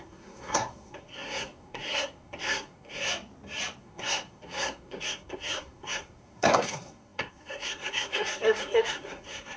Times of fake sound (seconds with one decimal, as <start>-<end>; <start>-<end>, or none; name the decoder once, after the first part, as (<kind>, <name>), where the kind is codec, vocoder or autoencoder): 0.0-3.1 (codec, SNAC); 3.8-9.6